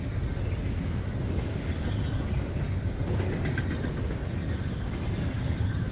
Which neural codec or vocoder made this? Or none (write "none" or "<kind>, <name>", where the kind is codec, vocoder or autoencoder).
none